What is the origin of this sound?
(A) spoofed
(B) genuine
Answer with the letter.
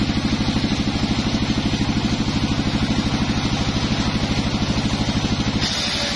B